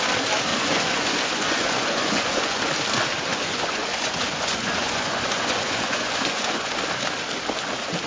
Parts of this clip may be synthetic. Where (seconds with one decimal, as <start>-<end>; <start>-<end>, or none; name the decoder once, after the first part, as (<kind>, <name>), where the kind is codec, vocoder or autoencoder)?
0.5-2.6 (vocoder, Vocos); 3.3-6.7